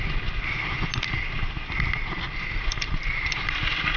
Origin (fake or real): real